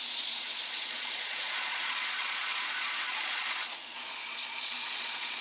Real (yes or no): no